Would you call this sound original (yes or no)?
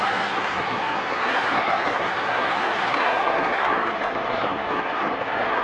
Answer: no